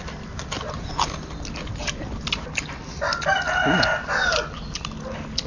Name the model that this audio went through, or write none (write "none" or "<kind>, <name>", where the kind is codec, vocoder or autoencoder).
none